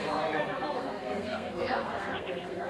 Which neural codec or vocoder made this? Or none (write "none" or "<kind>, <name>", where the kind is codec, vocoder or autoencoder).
codec, SNAC